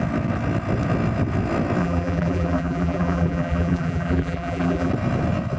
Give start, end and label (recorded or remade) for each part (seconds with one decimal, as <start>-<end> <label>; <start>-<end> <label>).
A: 0.0-1.8 recorded; 1.8-4.9 remade; 4.9-5.6 recorded